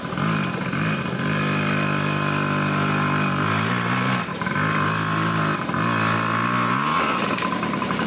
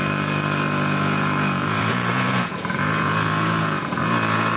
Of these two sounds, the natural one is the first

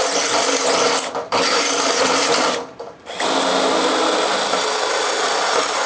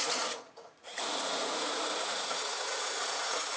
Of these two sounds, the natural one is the first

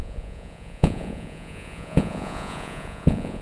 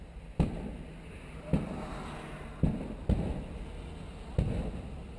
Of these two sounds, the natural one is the second